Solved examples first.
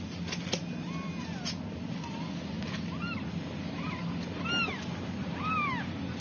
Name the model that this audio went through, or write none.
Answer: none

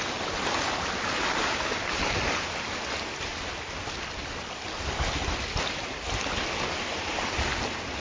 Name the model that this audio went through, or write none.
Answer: none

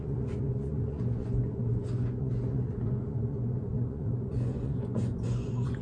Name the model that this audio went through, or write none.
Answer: vocoder, Vocos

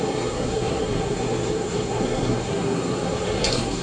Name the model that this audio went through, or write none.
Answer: codec, SNAC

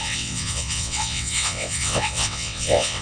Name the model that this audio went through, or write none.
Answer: vocoder, WaveNeXt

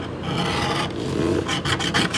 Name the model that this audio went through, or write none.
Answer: none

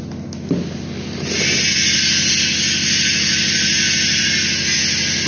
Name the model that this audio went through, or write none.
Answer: none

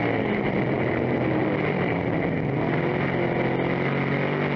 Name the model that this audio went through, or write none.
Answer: none